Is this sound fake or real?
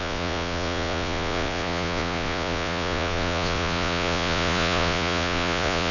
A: fake